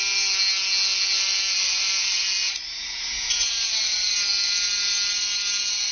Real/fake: real